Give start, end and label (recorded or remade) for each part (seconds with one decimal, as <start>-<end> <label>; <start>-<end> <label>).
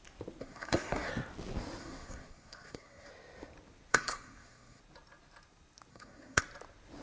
0.0-0.4 recorded; 0.4-1.1 remade; 1.1-1.8 recorded; 1.8-3.1 remade; 3.1-3.9 recorded; 3.9-4.8 remade; 4.8-5.9 recorded; 5.9-6.4 remade; 6.4-7.0 recorded